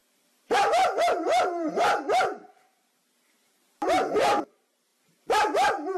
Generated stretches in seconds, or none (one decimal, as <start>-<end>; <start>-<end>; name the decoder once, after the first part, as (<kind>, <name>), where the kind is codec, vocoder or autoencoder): 0.0-1.5 (vocoder, BigVGAN v2); 4.9-6.0